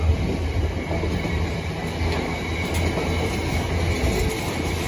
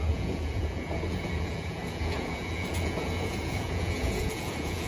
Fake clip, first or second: second